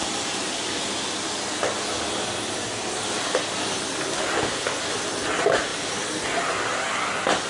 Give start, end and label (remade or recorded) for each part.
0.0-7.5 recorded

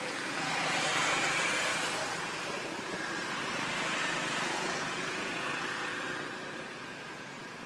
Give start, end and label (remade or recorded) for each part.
0.0-1.7 remade; 1.7-3.8 recorded; 3.8-5.9 remade; 5.9-6.7 recorded; 6.7-7.7 remade